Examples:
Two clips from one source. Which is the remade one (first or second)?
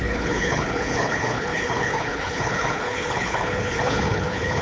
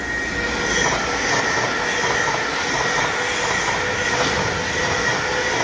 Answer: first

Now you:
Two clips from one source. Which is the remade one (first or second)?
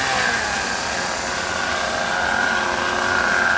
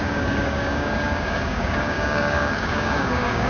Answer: second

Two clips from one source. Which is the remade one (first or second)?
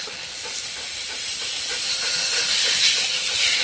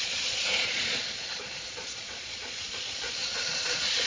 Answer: second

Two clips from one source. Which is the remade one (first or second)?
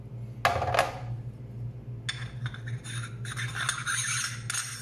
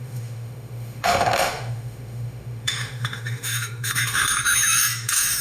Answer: second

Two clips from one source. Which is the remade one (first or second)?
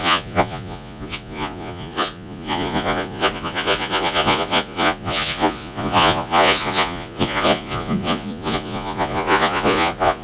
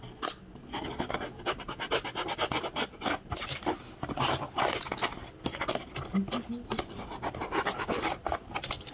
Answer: first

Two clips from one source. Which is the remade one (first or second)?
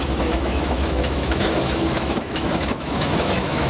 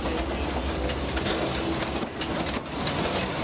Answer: first